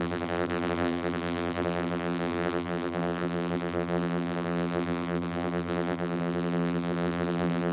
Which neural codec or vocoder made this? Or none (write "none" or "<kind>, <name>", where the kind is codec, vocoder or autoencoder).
vocoder, BigVGAN v2